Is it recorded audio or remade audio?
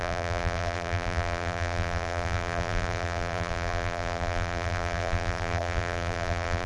remade